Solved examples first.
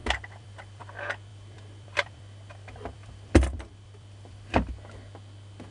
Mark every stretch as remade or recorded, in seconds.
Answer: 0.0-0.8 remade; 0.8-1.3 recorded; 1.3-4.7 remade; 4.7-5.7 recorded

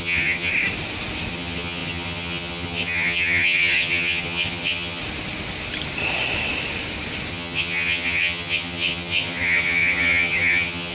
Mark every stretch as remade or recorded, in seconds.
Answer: 0.0-0.5 remade; 0.5-1.3 recorded; 1.3-5.0 remade; 5.0-7.3 recorded; 7.3-10.9 remade

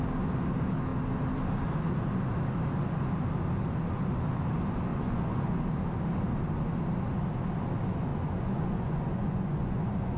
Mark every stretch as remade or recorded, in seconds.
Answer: 0.0-4.9 recorded; 4.9-5.6 remade; 5.6-8.1 recorded; 8.1-10.2 remade